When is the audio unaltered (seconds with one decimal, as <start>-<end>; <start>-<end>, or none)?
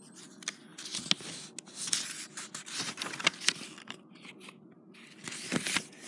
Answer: 0.0-6.1